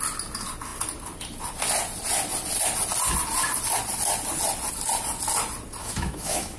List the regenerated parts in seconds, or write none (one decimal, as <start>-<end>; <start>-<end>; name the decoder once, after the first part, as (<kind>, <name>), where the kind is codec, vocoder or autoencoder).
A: 5.8-6.6 (autoencoder, DAC-VAE)